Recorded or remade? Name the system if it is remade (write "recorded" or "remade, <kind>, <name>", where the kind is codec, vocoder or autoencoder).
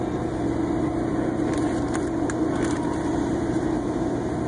recorded